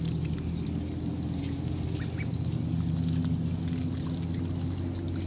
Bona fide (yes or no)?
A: yes